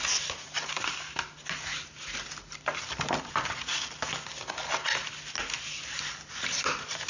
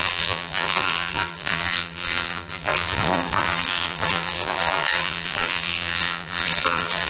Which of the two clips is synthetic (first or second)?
second